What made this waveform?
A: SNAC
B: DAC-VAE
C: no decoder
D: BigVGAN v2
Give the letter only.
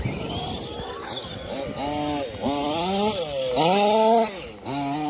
C